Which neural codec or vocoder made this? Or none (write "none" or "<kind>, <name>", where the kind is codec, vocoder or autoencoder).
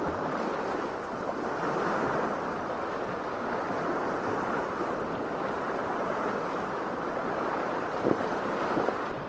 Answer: none